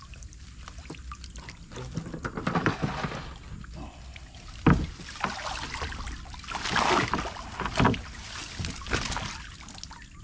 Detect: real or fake real